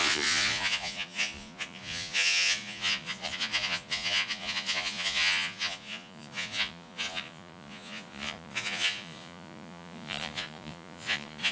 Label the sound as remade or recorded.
remade